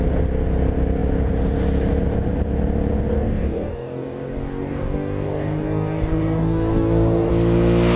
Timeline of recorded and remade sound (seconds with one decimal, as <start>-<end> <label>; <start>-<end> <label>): 0.0-3.1 recorded; 3.1-7.3 remade; 7.3-8.0 recorded